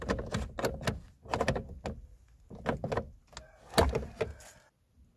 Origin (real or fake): real